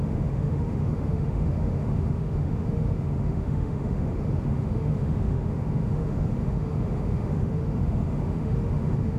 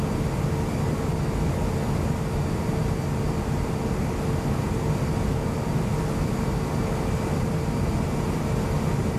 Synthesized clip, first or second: first